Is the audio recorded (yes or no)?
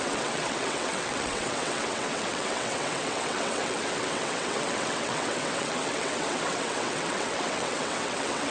no